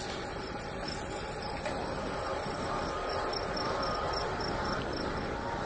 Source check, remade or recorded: recorded